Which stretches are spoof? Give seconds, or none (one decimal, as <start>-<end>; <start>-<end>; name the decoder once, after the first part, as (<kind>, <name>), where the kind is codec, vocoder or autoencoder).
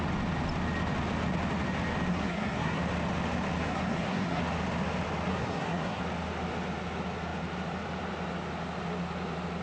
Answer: 2.1-2.8 (codec, SNAC); 3.6-4.4; 5.3-6.0